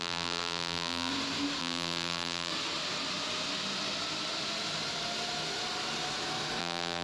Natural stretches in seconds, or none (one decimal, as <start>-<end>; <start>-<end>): 1.1-1.6; 2.5-6.6